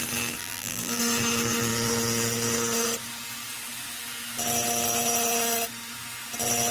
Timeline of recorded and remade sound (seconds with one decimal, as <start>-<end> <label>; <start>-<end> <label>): 0.0-0.4 recorded; 0.4-1.0 remade; 1.0-6.7 recorded